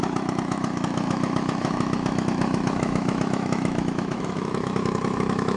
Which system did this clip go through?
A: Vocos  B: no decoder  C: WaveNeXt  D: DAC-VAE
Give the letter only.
D